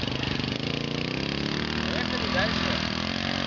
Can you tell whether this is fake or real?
real